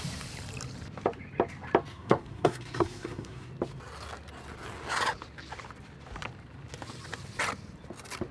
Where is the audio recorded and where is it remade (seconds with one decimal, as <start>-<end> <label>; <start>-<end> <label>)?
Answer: 0.0-1.9 recorded; 1.9-3.5 remade; 3.5-8.3 recorded